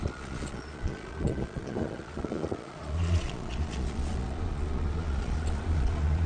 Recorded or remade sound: remade